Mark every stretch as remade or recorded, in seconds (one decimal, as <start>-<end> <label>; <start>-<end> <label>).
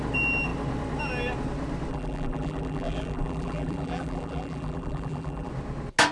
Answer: 0.0-1.9 recorded; 1.9-5.5 remade; 5.5-6.1 recorded